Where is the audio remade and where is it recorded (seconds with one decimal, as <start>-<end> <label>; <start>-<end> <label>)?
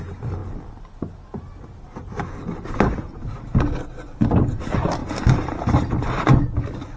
0.0-7.0 recorded